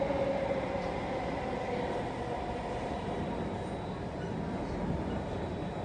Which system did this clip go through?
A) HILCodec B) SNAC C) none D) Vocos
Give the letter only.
C